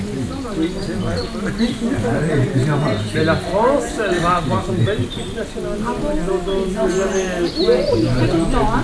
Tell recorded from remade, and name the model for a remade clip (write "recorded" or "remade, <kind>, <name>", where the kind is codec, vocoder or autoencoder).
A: recorded